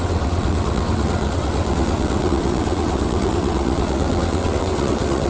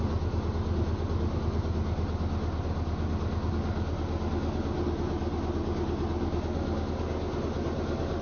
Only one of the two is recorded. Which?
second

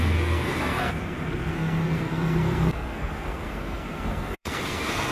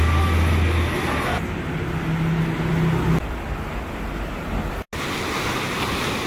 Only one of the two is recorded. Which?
second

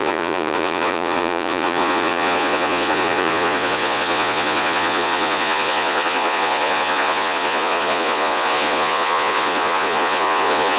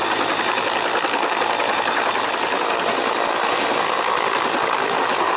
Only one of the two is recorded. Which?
second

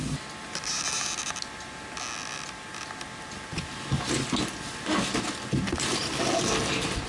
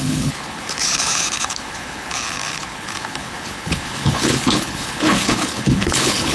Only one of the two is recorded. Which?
first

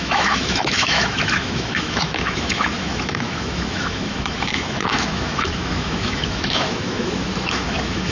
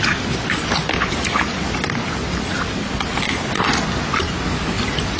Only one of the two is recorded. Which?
second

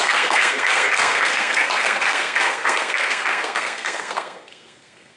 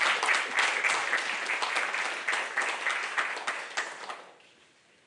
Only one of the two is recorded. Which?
second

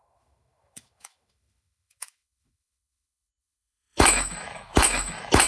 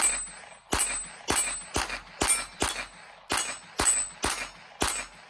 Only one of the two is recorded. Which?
second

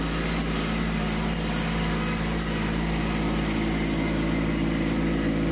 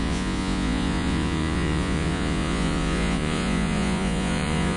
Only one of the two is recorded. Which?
first